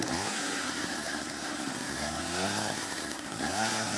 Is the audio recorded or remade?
remade